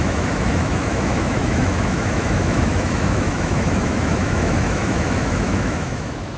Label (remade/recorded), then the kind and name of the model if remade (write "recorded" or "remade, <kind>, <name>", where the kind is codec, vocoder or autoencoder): remade, autoencoder, DAC-VAE